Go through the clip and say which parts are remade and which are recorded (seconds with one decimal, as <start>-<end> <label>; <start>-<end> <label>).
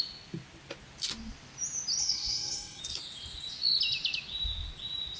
0.0-2.0 recorded; 2.0-2.8 remade; 2.8-5.2 recorded